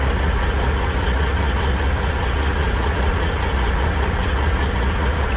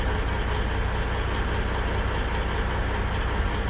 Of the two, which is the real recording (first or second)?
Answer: second